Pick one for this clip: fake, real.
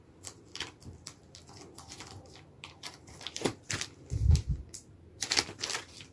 fake